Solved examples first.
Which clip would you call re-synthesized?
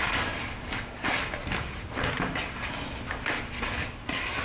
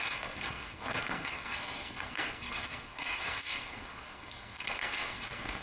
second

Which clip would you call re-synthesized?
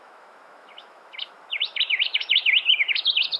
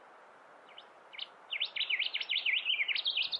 first